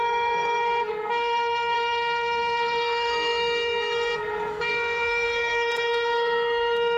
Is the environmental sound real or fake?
fake